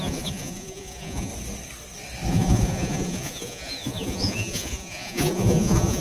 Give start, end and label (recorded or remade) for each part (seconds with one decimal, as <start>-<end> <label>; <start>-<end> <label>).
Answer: 0.0-1.3 remade; 1.3-2.3 recorded; 2.3-6.0 remade